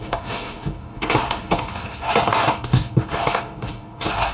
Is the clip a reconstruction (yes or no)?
yes